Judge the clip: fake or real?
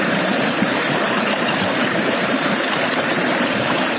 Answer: fake